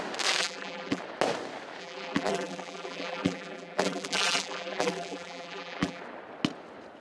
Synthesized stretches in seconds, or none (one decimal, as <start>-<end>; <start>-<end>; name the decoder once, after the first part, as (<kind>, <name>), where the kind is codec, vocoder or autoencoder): 0.4-1.0 (vocoder, BigVGAN v2); 1.8-6.0

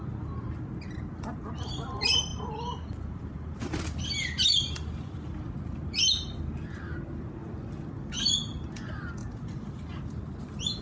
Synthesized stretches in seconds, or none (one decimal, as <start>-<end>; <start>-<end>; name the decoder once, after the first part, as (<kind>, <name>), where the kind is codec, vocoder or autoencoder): 2.3-3.8 (vocoder, BigVGAN v2); 9.2-9.8

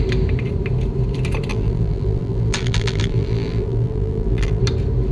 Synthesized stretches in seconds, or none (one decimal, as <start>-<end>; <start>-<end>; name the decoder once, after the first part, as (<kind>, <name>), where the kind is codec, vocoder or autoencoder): 1.5-4.6 (vocoder, BigVGAN v2)

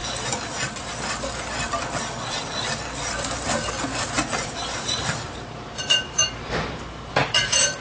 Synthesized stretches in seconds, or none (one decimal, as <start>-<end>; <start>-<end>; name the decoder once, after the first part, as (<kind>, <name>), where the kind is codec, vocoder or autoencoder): 4.3-7.8 (vocoder, BigVGAN v2)

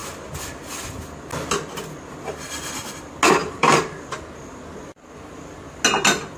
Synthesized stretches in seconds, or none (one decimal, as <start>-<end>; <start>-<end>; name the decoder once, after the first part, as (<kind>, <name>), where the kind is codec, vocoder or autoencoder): 3.4-4.1 (vocoder, BigVGAN v2)

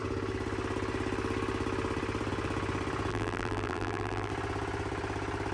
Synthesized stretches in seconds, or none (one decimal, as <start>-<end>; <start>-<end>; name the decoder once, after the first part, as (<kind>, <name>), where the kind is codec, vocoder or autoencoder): 3.1-4.3 (vocoder, BigVGAN v2)

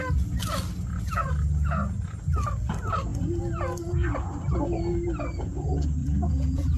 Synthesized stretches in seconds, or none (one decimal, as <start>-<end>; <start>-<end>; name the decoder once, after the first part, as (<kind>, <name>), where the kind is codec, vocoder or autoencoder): 6.0-6.8 (vocoder, BigVGAN v2)

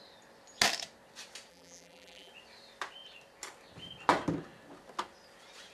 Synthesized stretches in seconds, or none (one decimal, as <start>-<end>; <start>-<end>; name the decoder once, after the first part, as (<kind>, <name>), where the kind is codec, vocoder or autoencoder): 1.5-2.3 (vocoder, BigVGAN v2)